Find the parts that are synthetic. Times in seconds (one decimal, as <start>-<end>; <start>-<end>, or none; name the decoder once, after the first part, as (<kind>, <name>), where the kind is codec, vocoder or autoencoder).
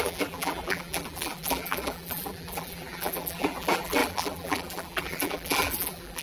0.0-6.2 (vocoder, BigVGAN v2)